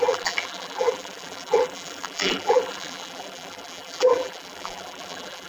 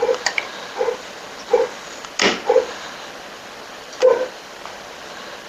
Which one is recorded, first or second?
second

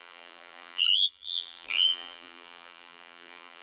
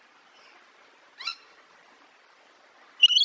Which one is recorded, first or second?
second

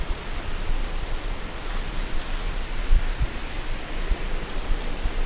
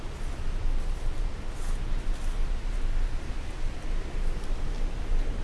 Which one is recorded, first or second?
second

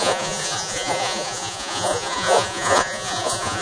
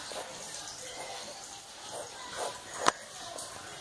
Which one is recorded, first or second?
second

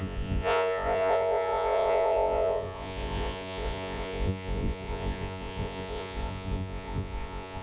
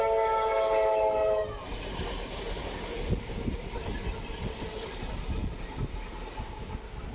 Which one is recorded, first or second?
second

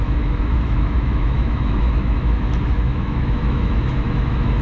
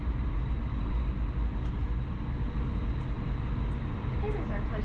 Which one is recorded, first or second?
second